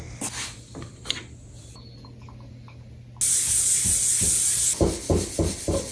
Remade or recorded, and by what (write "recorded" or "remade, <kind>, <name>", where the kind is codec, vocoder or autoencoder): recorded